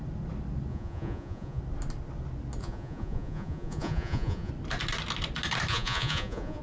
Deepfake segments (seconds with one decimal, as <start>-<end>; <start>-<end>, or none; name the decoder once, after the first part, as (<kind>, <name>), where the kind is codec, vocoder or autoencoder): 0.7-1.6 (vocoder, Vocos); 2.6-4.5; 5.7-6.6